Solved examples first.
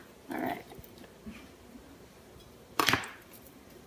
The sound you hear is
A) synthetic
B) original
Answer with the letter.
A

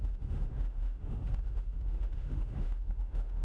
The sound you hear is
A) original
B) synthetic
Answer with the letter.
B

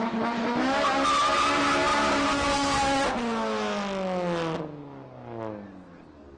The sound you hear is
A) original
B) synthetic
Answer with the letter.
A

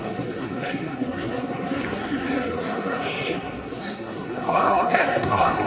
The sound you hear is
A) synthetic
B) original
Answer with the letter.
A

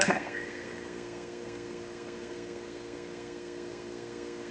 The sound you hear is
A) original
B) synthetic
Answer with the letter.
B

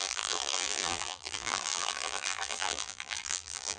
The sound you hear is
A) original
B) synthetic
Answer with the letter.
B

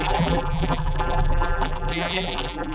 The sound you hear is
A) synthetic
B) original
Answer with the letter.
A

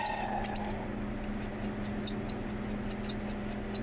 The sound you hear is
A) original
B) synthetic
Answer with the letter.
A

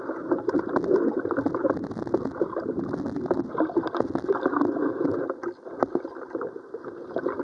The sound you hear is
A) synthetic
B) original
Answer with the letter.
B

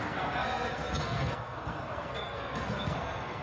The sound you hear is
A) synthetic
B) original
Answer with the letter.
A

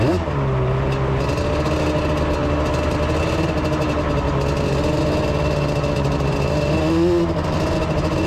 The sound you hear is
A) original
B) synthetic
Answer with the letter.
A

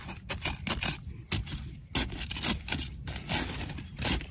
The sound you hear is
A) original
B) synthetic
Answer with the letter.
A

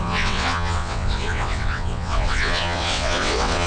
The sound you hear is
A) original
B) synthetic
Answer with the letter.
B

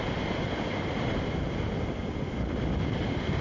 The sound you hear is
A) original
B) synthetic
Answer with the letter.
A